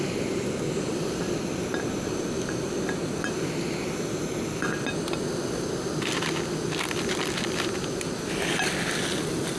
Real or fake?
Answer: real